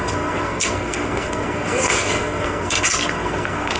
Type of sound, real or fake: fake